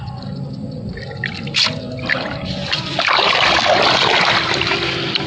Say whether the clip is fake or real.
real